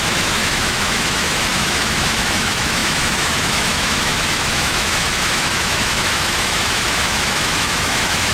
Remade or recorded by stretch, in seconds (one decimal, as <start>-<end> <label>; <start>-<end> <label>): 0.0-8.3 remade